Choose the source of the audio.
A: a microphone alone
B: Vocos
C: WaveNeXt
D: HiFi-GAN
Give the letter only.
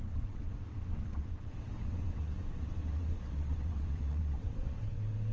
C